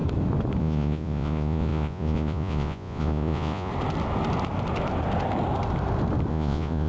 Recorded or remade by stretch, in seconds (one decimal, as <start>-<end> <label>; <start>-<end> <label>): 0.0-0.6 recorded; 0.6-3.7 remade; 3.7-6.3 recorded; 6.3-6.9 remade